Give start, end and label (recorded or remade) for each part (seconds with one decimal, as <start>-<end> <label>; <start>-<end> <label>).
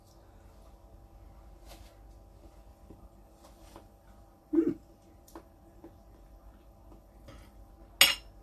0.0-2.7 recorded; 2.7-7.7 remade; 7.7-8.4 recorded